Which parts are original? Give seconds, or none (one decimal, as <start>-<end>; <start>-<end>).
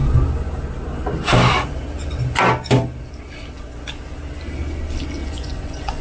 0.0-5.2